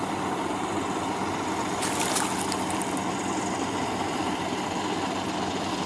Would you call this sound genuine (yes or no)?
yes